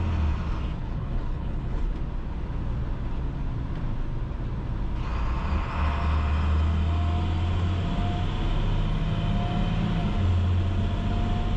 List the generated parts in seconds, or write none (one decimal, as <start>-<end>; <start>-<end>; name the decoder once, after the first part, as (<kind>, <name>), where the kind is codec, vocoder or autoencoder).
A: 0.8-1.9 (codec, HILCodec)